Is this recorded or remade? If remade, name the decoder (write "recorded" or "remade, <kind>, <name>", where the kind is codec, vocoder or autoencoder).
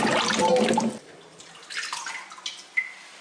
recorded